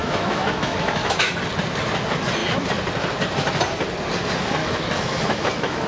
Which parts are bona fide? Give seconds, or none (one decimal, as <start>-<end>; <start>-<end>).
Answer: 1.3-4.6